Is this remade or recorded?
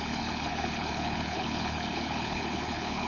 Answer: remade